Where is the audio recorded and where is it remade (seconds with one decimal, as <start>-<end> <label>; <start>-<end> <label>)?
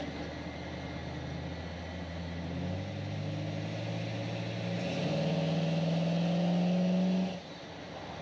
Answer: 0.0-8.2 recorded